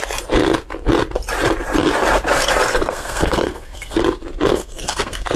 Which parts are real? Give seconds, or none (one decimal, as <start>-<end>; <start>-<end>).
0.0-2.7; 4.0-4.5